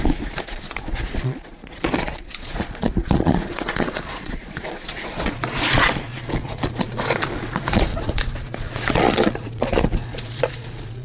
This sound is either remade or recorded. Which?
remade